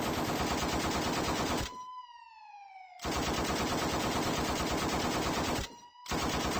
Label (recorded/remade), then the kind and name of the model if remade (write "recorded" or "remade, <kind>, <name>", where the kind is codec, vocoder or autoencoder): recorded